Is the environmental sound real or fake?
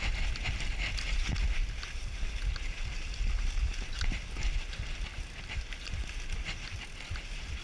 real